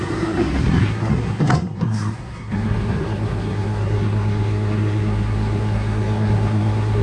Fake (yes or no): yes